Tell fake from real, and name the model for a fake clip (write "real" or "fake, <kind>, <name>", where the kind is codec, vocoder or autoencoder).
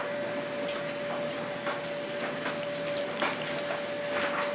real